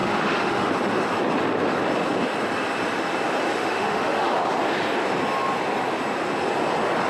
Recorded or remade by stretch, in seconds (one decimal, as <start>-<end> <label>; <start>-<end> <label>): 0.0-0.7 remade; 0.7-3.5 recorded; 3.5-4.3 remade; 4.3-7.1 recorded